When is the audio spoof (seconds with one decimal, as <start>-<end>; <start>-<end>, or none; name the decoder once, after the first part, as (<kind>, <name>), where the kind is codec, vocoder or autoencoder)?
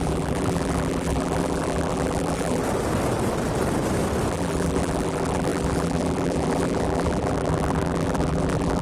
0.0-2.6 (vocoder, BigVGAN v2); 4.3-8.8